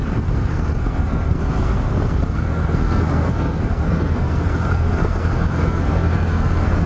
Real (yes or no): no